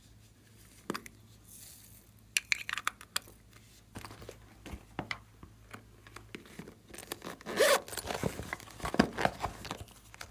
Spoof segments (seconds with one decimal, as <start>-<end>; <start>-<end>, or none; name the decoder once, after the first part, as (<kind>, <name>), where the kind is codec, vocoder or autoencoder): none